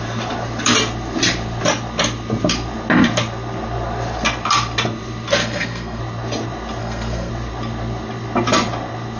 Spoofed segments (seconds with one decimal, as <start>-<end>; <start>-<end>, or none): 5.4-6.0; 6.8-7.3